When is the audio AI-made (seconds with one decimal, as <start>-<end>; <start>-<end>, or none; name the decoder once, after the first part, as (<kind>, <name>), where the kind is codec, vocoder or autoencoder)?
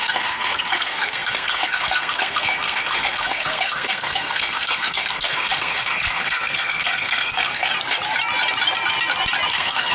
0.0-7.7 (codec, SNAC); 9.5-9.9